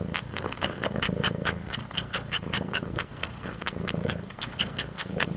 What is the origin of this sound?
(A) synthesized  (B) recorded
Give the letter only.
A